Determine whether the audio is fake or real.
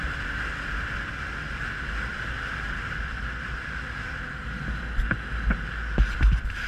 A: real